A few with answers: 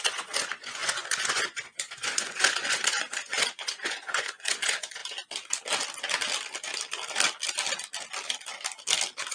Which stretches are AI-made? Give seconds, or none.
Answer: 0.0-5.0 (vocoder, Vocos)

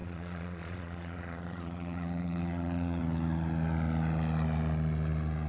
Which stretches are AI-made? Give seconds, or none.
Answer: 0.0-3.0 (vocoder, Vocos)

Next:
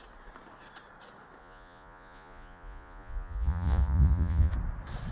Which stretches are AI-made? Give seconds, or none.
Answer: 1.4-4.5 (vocoder, Vocos)